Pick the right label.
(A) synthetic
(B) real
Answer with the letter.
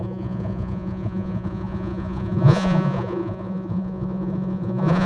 A